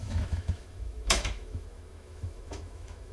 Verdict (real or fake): fake